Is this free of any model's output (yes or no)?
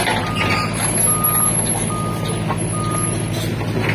yes